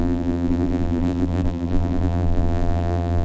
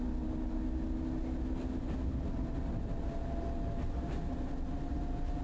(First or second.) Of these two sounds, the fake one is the first